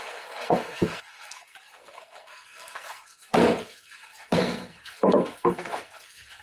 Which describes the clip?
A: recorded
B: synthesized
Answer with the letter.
B